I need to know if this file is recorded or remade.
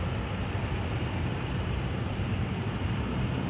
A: remade